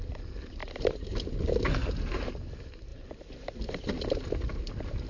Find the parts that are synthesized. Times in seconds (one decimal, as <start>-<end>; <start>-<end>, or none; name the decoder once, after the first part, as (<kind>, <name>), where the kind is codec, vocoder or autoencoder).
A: 0.6-1.2 (vocoder, BigVGAN v2); 1.8-2.3